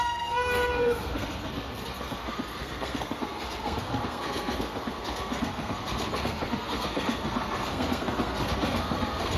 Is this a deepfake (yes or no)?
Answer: yes